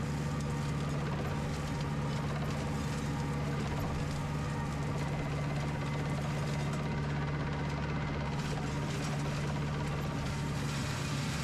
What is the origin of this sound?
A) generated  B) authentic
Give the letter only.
B